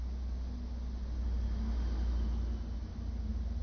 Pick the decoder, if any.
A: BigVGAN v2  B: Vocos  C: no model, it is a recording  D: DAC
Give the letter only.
C